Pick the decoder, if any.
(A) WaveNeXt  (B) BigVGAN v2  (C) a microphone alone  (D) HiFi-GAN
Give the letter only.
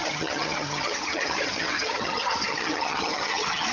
D